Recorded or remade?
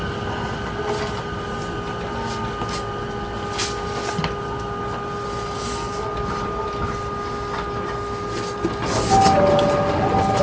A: recorded